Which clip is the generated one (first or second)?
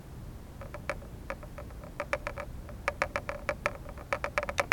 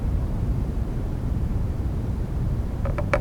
second